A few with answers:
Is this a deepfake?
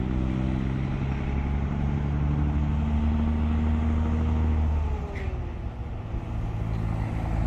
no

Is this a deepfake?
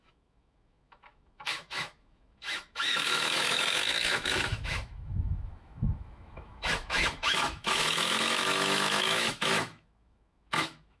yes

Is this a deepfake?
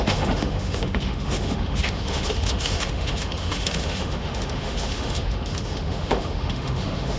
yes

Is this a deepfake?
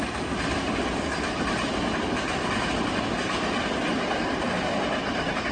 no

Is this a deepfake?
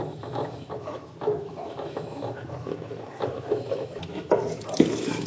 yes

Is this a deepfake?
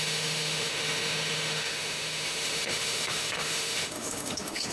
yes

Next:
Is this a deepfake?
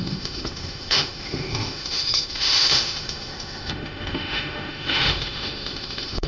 yes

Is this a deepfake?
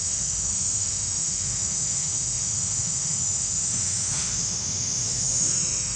yes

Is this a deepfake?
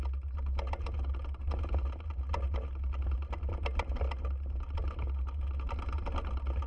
no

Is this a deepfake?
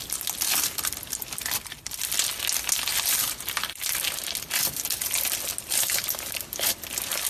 no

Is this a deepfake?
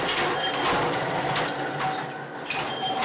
no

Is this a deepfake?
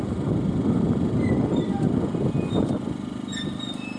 no